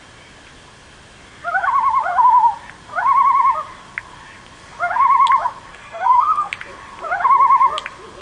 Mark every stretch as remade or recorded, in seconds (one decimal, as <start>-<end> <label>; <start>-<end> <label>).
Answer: 0.0-5.7 recorded; 5.7-6.5 remade; 6.5-8.2 recorded